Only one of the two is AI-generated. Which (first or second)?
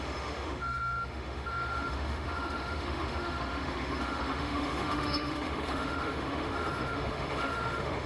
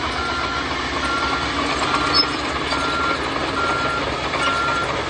first